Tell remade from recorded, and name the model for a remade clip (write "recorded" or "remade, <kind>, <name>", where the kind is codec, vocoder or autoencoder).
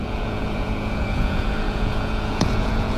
remade, vocoder, Vocos